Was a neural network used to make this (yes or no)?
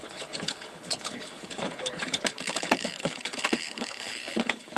yes